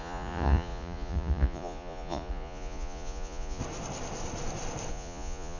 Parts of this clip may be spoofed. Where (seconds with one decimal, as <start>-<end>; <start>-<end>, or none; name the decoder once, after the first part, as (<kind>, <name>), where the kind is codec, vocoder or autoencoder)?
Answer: 0.0-3.6 (vocoder, Vocos); 4.9-5.6